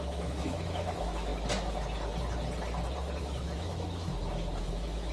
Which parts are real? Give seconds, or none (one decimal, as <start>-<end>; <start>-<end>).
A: 1.3-3.2; 4.1-4.6